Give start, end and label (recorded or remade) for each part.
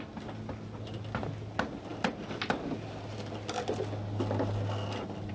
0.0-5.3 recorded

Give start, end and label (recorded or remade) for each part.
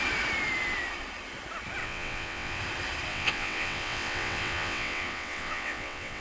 0.0-1.8 recorded; 1.8-2.6 remade; 2.6-3.1 recorded; 3.1-6.2 remade